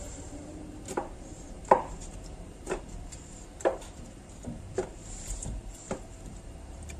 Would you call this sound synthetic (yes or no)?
yes